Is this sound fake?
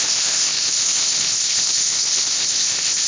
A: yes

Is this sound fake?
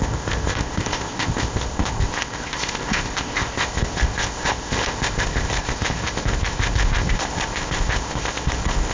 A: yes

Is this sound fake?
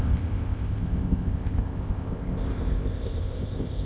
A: yes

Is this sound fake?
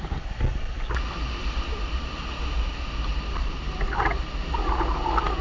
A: no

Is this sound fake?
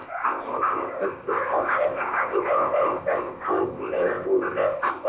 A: yes